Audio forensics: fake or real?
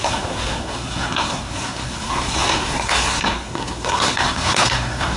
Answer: fake